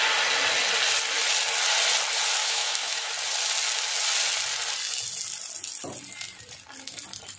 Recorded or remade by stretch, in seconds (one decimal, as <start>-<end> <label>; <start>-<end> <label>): 0.0-2.4 recorded; 2.4-3.1 remade; 3.1-7.4 recorded